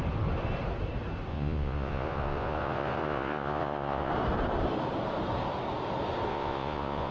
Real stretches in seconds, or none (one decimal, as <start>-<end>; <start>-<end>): 0.0-1.3; 4.1-6.3